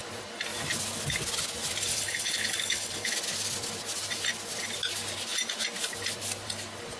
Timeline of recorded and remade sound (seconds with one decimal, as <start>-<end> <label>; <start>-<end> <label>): 0.0-1.9 recorded; 1.9-3.1 remade; 3.1-7.0 recorded